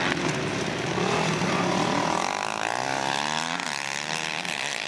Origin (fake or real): real